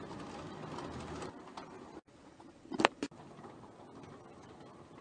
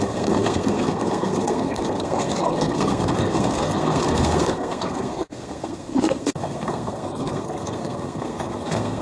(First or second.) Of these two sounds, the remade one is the second